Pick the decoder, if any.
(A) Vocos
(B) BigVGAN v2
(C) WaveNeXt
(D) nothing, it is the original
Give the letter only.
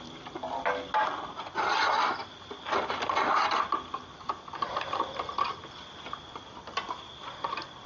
D